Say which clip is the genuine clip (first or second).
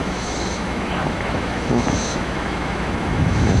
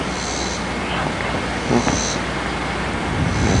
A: second